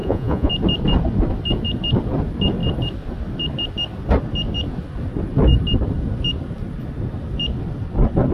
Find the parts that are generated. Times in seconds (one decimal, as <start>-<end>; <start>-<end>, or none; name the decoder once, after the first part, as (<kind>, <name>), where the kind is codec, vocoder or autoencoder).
0.0-0.5 (vocoder, Vocos)